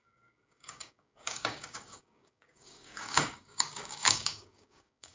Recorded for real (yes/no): no